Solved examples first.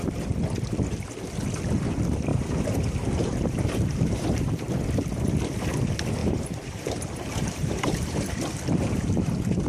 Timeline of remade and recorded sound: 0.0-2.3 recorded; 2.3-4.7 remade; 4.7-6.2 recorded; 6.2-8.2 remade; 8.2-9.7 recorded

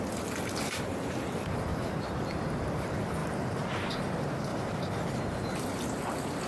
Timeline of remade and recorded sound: 0.0-6.5 recorded